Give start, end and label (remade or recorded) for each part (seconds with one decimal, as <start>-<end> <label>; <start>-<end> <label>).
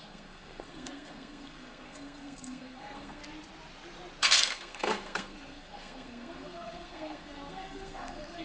0.0-3.2 remade; 3.2-4.2 recorded; 4.2-8.4 remade